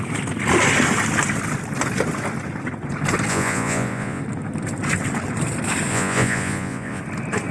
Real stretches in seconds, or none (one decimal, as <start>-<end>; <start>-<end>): 0.0-3.3; 4.2-5.9; 7.0-7.5